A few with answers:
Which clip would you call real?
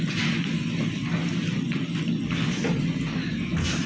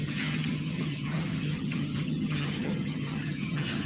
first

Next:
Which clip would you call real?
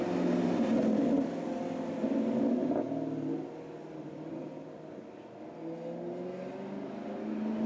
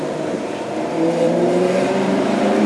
first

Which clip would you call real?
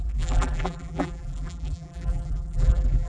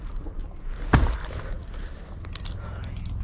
second